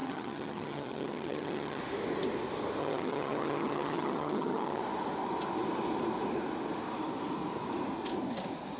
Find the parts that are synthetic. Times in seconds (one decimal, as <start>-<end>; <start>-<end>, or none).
0.0-1.8; 2.8-4.8